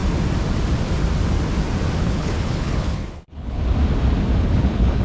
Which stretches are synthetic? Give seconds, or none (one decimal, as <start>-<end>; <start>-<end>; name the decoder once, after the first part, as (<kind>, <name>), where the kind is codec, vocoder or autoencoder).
2.0-3.6 (codec, HILCodec); 4.4-5.0